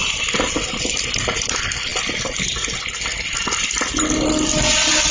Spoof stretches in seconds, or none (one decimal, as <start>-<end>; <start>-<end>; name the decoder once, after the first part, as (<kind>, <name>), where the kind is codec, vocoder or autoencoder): none